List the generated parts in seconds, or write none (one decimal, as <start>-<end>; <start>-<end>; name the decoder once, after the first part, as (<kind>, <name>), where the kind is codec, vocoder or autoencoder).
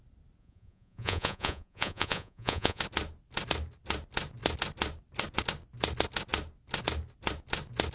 0.4-2.8 (vocoder, Vocos)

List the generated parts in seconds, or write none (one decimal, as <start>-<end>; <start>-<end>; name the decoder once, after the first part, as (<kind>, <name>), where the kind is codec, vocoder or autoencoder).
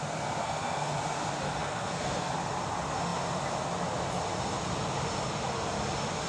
0.4-0.9 (codec, SNAC); 1.6-2.3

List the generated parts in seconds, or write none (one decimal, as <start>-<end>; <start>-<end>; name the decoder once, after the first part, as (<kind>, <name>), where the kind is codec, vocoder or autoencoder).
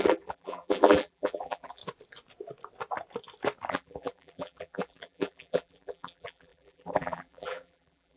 0.0-1.8 (vocoder, BigVGAN v2); 3.7-8.2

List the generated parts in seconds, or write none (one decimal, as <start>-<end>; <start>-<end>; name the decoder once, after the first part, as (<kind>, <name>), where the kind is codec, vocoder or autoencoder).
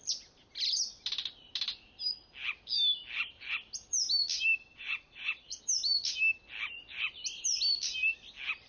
4.6-5.6 (vocoder, Vocos)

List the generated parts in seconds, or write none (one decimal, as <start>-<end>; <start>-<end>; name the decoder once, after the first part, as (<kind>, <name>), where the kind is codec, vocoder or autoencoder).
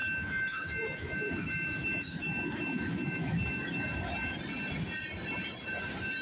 0.0-3.7 (autoencoder, DAC-VAE)